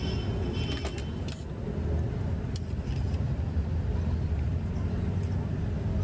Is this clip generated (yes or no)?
no